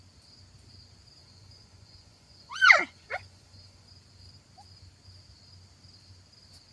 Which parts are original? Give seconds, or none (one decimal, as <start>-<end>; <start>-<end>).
0.0-1.2; 3.9-6.7